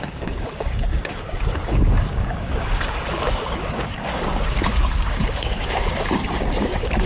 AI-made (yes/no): yes